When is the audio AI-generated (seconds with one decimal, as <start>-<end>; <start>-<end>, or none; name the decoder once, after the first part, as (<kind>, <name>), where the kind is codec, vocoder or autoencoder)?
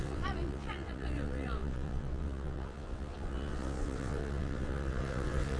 0.0-5.6 (vocoder, WaveNeXt)